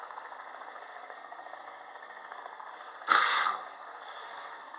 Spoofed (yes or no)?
yes